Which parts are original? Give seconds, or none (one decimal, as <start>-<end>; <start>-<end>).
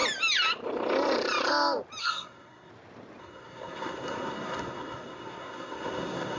0.0-2.0; 2.7-3.2